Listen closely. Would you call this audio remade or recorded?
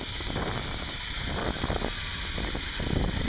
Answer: remade